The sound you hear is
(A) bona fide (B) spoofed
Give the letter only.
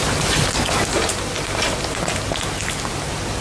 A